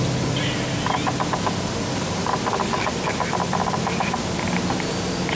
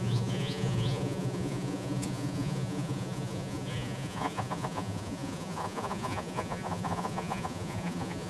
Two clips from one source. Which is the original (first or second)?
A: first